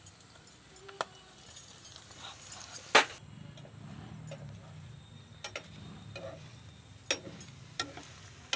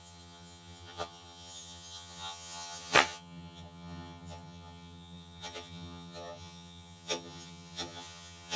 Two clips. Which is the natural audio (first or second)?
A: first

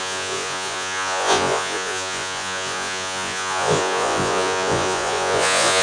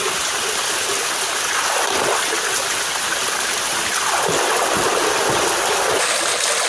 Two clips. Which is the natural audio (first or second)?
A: second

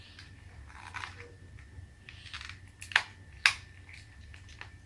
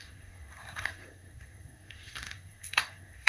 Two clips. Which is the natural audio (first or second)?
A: first